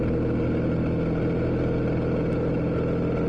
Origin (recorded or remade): recorded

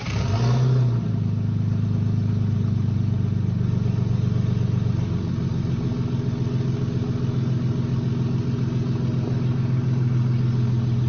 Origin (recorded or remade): recorded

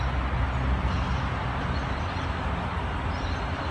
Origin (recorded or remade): recorded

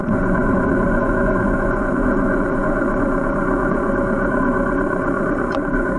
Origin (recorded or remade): remade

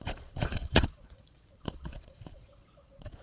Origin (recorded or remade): remade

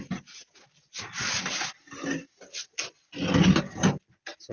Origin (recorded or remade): recorded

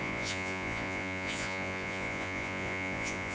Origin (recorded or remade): remade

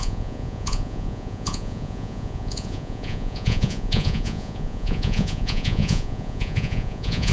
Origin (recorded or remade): remade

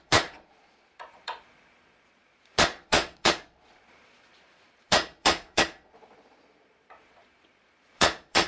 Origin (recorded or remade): remade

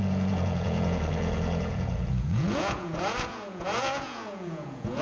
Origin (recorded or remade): remade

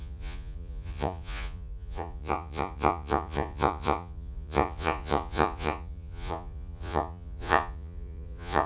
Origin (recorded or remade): remade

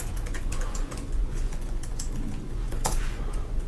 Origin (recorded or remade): remade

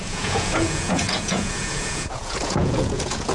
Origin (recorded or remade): remade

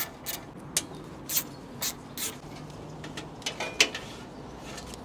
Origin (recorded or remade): recorded